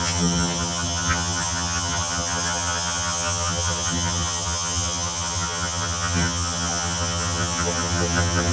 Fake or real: fake